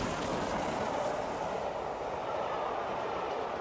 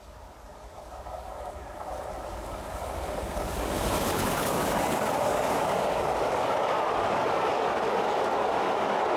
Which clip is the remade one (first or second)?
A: second